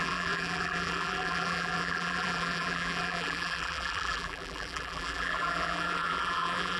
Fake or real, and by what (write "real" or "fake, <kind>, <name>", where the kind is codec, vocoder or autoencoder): fake, vocoder, BigVGAN v2